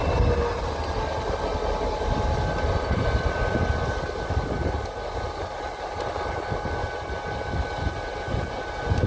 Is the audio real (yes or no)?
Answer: yes